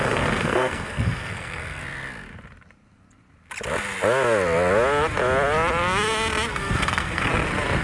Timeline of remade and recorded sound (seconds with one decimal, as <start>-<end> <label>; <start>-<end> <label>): 0.0-1.8 remade; 1.8-6.5 recorded; 6.5-7.3 remade; 7.3-7.8 recorded